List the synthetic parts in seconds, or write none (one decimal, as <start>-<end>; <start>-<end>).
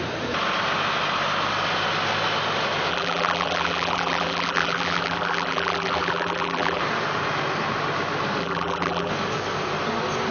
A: 2.9-6.8; 8.4-9.1